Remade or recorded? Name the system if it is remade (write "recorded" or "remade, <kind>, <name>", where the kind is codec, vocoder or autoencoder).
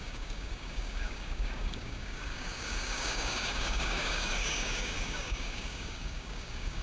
remade, codec, DAC